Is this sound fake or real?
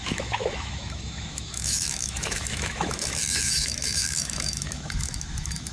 fake